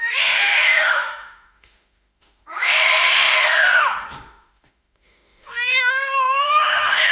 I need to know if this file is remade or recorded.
remade